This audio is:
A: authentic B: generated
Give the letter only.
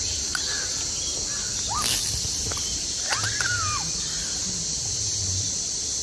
A